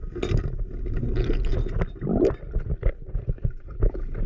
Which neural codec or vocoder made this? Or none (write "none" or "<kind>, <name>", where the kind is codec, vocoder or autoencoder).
none